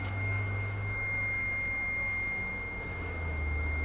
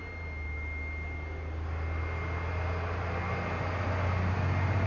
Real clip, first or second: second